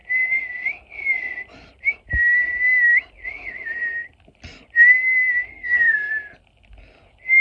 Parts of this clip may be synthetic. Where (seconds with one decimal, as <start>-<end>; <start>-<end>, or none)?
5.5-6.1

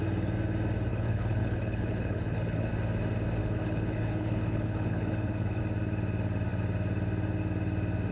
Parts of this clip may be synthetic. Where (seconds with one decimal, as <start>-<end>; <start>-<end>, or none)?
0.9-2.7; 3.4-5.6

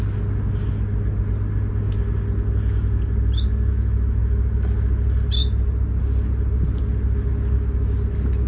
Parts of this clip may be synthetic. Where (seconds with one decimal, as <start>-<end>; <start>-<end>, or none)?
3.7-4.2

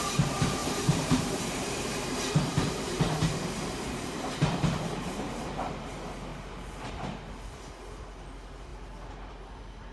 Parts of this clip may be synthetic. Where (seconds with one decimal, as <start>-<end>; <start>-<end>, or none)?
0.6-5.5

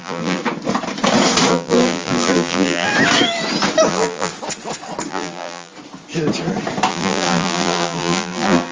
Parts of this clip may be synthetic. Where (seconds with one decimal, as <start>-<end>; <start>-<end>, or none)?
0.0-0.4; 1.5-2.9; 3.9-4.3; 5.1-5.7; 6.9-8.7

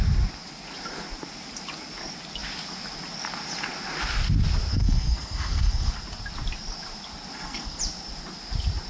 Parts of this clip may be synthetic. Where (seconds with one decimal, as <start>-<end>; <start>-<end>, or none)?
4.7-5.9; 7.3-7.8

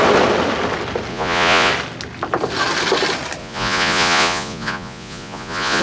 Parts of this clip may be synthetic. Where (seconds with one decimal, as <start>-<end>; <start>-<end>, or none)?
1.1-1.7; 3.4-5.8